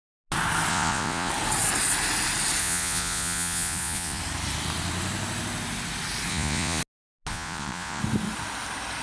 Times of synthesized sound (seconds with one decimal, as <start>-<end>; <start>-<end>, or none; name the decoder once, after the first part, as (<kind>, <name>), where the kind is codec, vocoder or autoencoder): 0.7-1.3 (vocoder, Vocos); 2.6-4.2; 6.3-6.8; 7.3-8.0